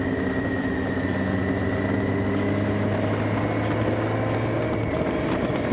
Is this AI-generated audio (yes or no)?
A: no